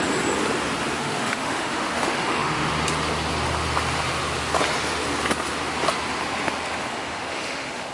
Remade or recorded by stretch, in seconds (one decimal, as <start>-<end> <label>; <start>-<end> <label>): 0.0-1.0 recorded; 1.0-2.7 remade; 2.7-6.9 recorded; 6.9-7.9 remade